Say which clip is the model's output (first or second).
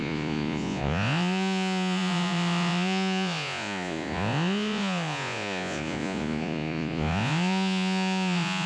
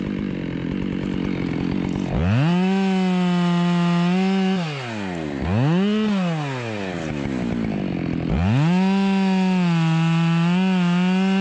first